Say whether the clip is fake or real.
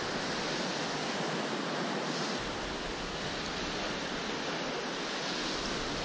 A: real